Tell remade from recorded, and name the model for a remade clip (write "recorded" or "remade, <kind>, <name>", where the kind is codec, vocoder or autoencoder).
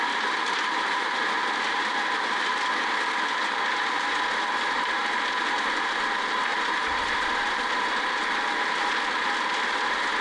recorded